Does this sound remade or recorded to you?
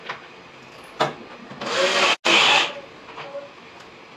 recorded